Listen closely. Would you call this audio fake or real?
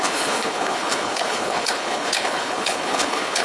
fake